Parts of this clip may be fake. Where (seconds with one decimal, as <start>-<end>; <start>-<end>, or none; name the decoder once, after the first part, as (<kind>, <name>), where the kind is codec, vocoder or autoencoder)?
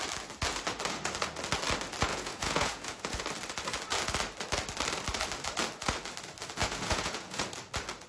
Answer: 2.1-3.2 (vocoder, Vocos); 6.6-7.5